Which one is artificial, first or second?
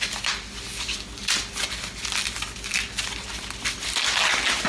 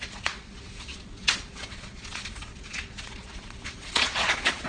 second